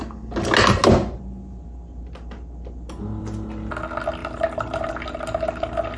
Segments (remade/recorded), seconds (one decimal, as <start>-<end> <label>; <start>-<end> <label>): 0.0-4.2 recorded; 4.2-4.9 remade; 4.9-6.0 recorded